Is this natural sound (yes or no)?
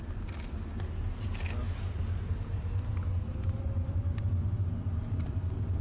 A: yes